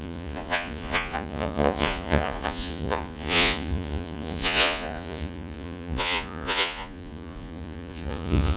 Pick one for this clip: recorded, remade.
remade